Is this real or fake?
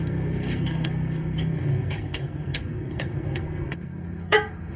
fake